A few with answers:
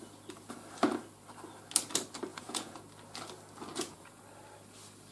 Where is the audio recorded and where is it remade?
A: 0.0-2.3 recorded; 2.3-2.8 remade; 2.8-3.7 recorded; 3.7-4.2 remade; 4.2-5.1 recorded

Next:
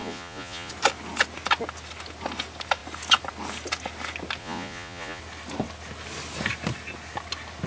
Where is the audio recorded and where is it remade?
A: 0.0-0.7 remade; 0.7-4.4 recorded; 4.4-5.2 remade; 5.2-7.7 recorded

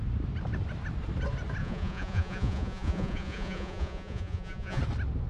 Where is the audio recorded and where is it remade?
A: 0.0-1.6 recorded; 1.6-4.8 remade; 4.8-5.3 recorded